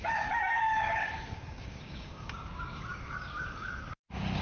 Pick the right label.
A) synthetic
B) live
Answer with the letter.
A